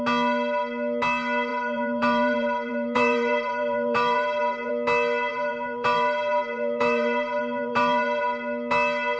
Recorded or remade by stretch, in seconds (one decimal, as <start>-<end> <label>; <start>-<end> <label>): 0.0-1.5 recorded; 1.5-4.7 remade; 4.7-5.3 recorded; 5.3-8.2 remade; 8.2-9.2 recorded